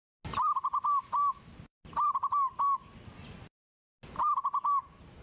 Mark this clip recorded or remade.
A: recorded